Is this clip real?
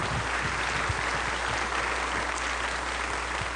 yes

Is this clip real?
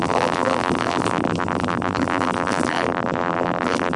no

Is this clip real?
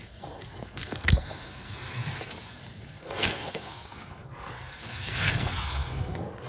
no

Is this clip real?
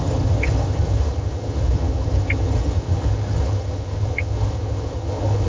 no